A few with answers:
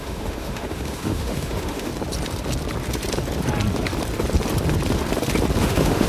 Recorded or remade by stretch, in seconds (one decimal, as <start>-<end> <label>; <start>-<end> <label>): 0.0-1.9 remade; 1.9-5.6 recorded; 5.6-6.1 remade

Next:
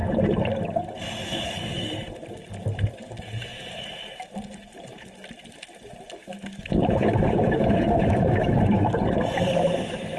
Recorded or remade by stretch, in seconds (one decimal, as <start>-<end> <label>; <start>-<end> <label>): 0.0-6.2 recorded; 6.2-9.0 remade; 9.0-10.2 recorded

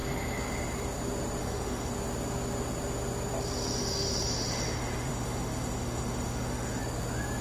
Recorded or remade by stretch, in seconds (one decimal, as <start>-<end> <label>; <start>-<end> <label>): 0.0-1.4 recorded; 1.4-1.9 remade; 1.9-3.8 recorded; 3.8-6.8 remade; 6.8-7.4 recorded

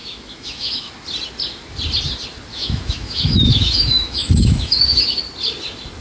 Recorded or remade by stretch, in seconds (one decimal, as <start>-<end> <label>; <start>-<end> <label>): 0.0-0.9 remade; 0.9-2.5 recorded; 2.5-5.2 remade; 5.2-6.0 recorded

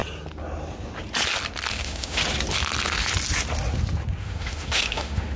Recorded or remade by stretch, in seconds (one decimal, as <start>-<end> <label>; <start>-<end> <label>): 0.0-1.7 recorded; 1.7-2.2 remade; 2.2-4.2 recorded; 4.2-5.4 remade

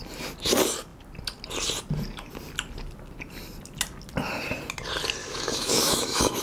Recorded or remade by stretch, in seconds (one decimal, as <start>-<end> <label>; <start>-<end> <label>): 0.0-5.2 recorded; 5.2-6.4 remade

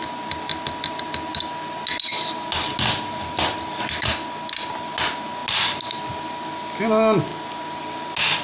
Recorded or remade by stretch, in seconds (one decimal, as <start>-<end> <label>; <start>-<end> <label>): 0.0-8.4 recorded